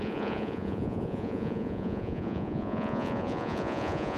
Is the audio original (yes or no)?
no